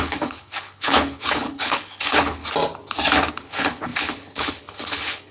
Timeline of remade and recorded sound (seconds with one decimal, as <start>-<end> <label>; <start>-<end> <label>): 0.0-2.4 remade; 2.4-3.3 recorded; 3.3-5.3 remade